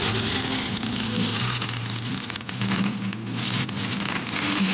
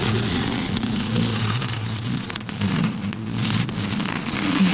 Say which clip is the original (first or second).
first